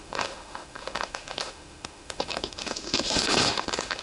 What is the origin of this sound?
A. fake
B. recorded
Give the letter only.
A